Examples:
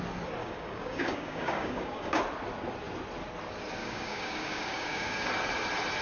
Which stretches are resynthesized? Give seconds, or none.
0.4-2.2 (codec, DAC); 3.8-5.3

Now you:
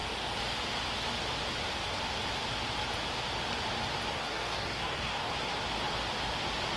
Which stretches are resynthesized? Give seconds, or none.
4.1-5.3 (codec, DAC)

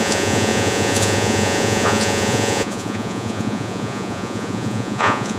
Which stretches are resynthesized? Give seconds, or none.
0.0-5.4 (vocoder, Vocos)

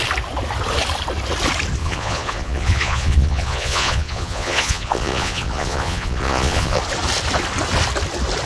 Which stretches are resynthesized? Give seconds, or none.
1.8-6.8 (vocoder, Vocos)

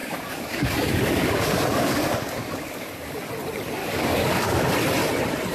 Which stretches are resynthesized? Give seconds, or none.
0.0-3.3 (codec, DAC); 3.8-4.7

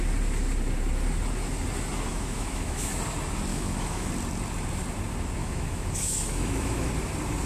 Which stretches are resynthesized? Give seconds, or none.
2.1-3.0 (autoencoder, DAC-VAE); 3.5-4.1; 5.4-6.9

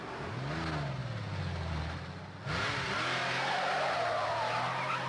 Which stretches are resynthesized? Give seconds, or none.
none

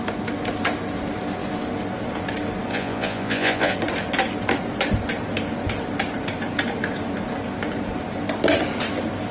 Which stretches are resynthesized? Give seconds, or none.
2.7-3.7 (vocoder, Vocos)